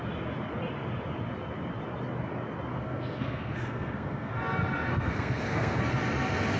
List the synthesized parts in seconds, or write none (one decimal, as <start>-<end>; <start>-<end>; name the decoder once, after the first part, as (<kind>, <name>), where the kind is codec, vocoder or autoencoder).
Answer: 2.7-4.3 (codec, SNAC); 4.9-5.8